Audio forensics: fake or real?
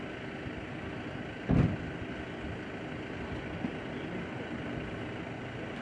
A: real